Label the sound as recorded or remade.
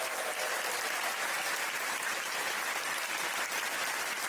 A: remade